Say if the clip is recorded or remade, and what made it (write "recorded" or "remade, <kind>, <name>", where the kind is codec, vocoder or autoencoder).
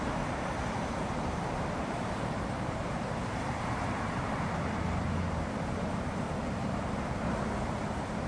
remade, vocoder, BigVGAN v2